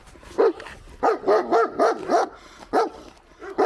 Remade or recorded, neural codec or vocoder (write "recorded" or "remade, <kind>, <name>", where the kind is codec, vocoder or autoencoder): recorded